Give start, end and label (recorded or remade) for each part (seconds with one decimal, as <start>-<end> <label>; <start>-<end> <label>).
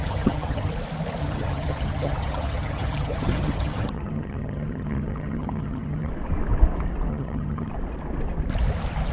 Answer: 0.0-0.7 remade; 0.7-1.2 recorded; 1.2-6.1 remade; 6.1-7.1 recorded; 7.1-7.7 remade; 7.7-9.1 recorded